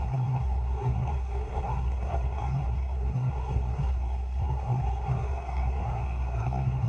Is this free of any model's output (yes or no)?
no